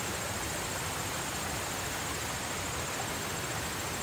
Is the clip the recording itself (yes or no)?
yes